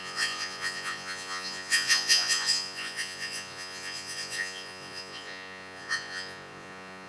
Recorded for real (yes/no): no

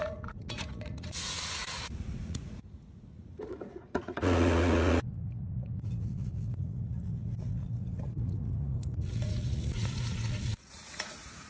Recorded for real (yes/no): no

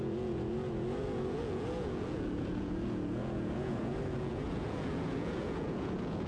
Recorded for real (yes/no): no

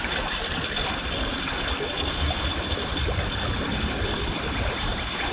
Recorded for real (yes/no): yes